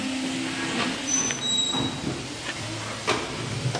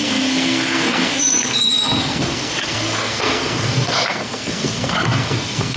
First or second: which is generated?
second